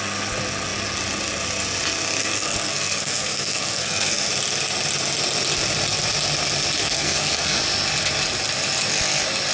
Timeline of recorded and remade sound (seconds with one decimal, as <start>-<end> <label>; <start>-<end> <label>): 0.0-2.2 recorded; 2.2-4.3 remade; 4.3-6.8 recorded; 6.8-7.6 remade; 7.6-9.5 recorded